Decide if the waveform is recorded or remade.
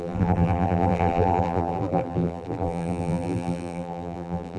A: remade